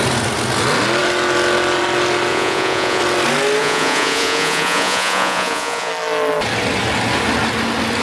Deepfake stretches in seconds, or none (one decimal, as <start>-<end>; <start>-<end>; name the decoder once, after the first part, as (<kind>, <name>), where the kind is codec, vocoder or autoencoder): 2.3-3.0 (vocoder, Vocos); 3.6-5.9